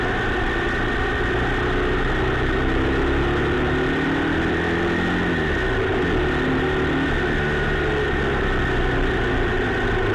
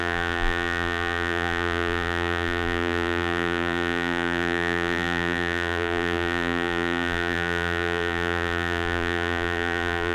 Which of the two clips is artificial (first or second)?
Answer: second